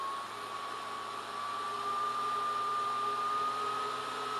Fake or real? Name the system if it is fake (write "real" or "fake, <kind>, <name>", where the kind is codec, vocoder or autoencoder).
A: real